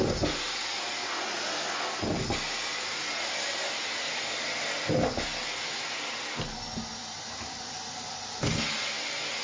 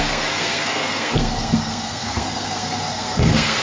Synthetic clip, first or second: second